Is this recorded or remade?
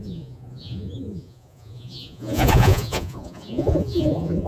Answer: remade